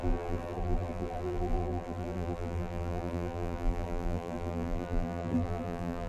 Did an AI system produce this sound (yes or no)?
yes